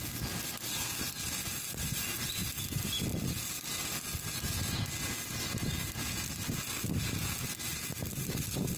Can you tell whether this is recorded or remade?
recorded